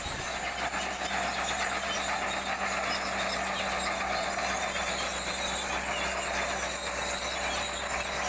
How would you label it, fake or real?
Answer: real